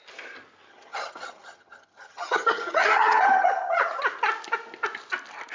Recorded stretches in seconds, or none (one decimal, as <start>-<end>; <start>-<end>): 0.0-0.7; 4.0-5.5